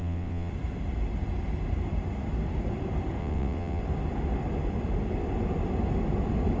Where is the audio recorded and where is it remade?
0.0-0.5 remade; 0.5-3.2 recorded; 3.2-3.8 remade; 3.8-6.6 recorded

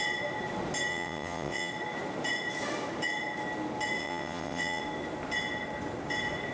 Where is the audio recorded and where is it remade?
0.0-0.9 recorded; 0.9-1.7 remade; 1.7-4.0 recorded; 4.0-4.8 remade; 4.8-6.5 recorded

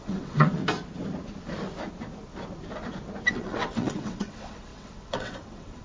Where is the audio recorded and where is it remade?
0.0-0.6 remade; 0.6-3.3 recorded; 3.3-5.8 remade

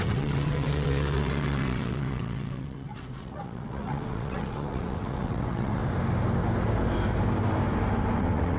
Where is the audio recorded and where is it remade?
0.0-5.8 remade; 5.8-8.2 recorded; 8.2-8.6 remade

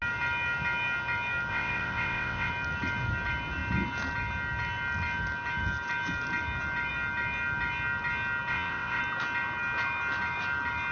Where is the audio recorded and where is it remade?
0.0-1.5 recorded; 1.5-2.5 remade; 2.5-8.5 recorded; 8.5-9.0 remade; 9.0-10.9 recorded